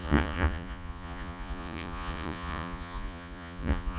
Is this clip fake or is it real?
fake